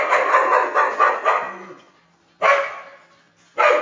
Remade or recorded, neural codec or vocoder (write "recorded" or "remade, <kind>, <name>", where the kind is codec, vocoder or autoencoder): recorded